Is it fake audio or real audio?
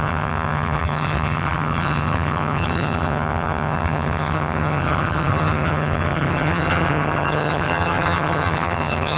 fake